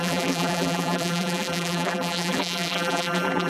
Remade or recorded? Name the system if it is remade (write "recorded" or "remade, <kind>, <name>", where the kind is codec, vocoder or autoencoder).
remade, vocoder, BigVGAN v2